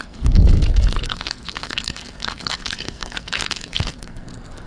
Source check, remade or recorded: remade